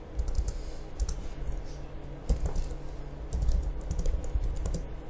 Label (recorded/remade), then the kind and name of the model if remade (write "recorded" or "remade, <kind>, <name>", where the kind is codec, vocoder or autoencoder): recorded